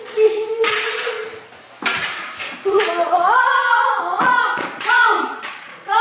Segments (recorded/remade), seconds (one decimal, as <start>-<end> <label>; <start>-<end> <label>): 0.0-1.2 remade; 1.2-2.4 recorded; 2.4-6.0 remade